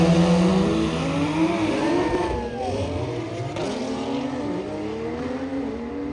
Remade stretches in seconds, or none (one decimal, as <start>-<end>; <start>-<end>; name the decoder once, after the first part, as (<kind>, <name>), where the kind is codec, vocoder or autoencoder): none